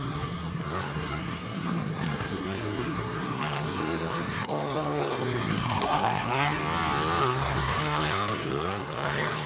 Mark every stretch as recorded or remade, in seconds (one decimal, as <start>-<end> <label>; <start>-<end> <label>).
0.0-6.6 remade; 6.6-7.2 recorded; 7.2-9.5 remade